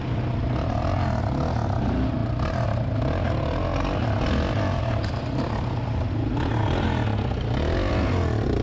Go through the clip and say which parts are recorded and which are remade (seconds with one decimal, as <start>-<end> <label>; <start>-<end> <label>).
0.0-8.6 recorded